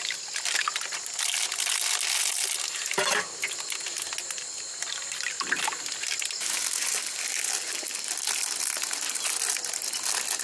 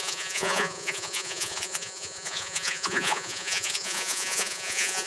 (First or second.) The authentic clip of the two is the first